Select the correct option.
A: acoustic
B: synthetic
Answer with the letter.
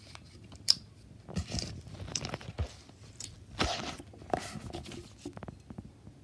A